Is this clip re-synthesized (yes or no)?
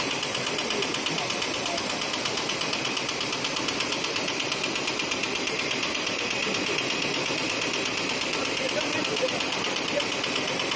no